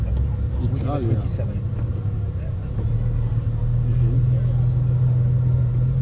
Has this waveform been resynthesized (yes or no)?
no